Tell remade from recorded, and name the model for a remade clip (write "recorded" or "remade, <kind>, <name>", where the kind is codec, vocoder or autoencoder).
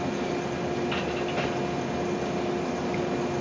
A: recorded